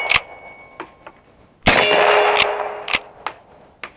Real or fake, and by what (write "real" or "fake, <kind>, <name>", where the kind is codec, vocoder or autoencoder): real